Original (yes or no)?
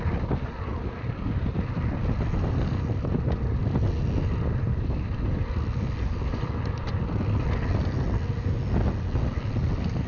yes